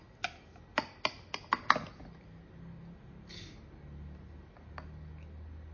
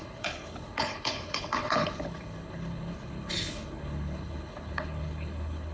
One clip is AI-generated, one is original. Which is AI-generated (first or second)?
second